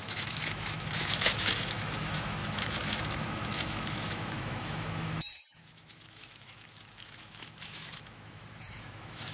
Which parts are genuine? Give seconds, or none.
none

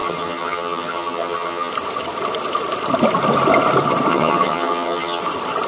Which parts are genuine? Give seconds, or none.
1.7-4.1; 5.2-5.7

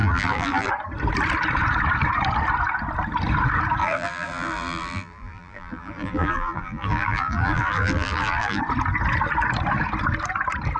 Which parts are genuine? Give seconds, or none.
0.7-3.8; 8.6-10.8

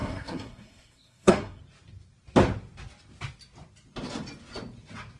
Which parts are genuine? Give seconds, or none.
1.6-5.2

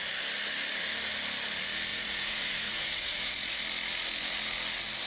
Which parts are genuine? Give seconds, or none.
0.0-1.9; 3.6-5.1